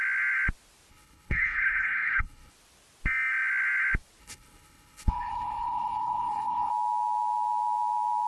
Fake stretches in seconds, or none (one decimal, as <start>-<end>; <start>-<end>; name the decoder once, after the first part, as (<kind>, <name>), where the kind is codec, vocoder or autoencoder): 0.9-2.5 (codec, HILCodec); 4.2-6.7